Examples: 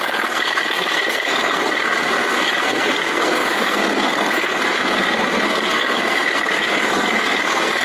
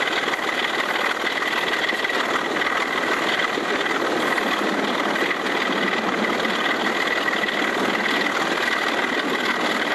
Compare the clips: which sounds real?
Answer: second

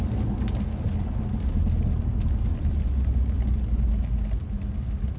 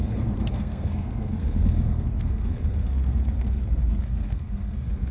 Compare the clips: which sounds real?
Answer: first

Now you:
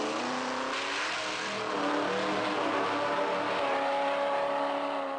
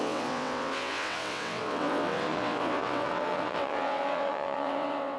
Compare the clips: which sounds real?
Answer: first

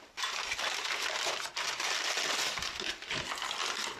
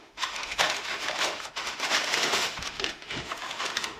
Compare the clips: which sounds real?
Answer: first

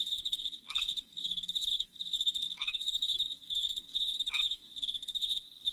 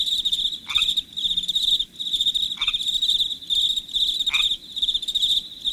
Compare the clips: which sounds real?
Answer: second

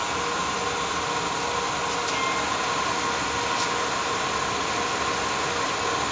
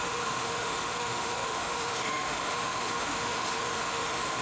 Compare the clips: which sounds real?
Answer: first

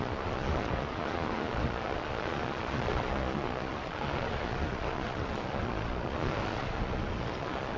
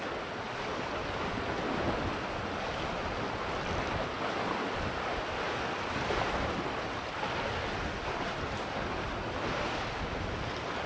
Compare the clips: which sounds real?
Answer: second